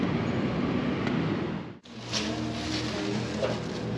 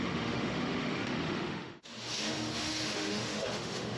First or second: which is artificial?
second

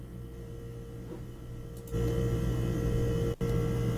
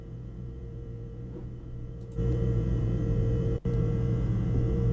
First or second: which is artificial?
second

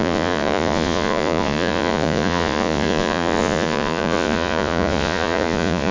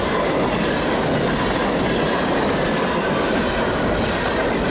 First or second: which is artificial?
first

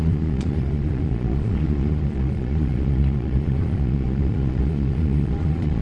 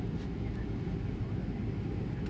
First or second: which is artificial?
first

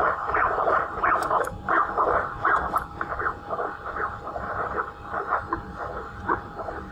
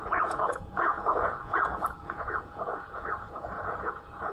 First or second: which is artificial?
second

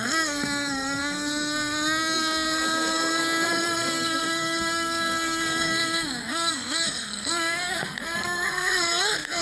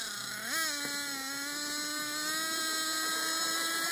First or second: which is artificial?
first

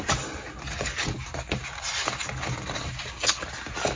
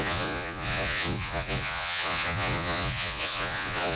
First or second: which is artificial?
second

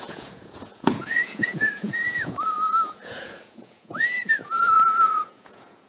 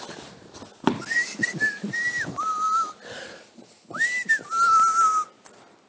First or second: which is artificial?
first